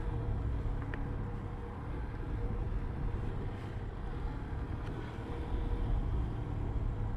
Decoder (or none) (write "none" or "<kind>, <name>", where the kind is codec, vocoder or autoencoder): none